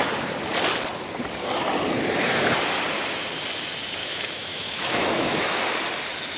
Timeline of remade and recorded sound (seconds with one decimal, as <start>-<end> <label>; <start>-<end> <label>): 0.0-4.0 recorded; 4.0-5.6 remade; 5.6-6.4 recorded